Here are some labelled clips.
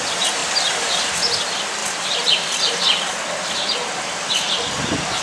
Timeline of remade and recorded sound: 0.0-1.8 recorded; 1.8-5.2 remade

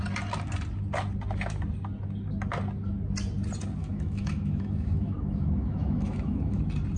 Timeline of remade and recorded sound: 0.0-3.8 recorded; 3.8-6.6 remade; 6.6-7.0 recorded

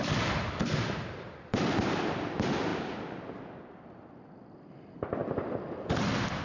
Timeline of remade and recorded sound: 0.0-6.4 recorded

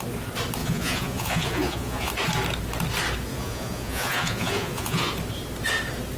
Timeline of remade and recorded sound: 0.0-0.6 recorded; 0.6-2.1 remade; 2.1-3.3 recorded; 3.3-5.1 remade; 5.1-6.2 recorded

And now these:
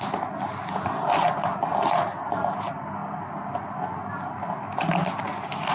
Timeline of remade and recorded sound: 0.0-5.7 recorded

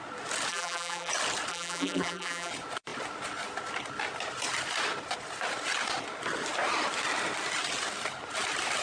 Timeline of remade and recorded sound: 0.0-0.5 recorded; 0.5-1.1 remade; 1.1-1.5 recorded; 1.5-2.5 remade; 2.5-8.8 recorded

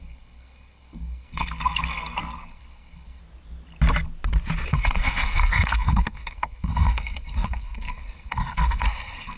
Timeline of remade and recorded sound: 0.0-3.2 remade; 3.2-4.7 recorded; 4.7-9.4 remade

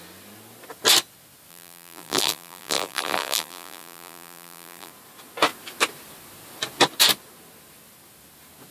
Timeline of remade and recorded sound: 0.0-1.5 recorded; 1.5-4.9 remade; 4.9-8.7 recorded